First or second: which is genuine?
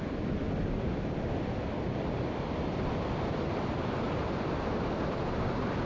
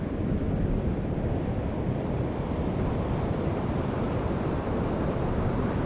first